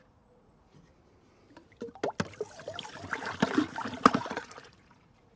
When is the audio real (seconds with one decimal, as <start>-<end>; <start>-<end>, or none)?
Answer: 0.9-4.1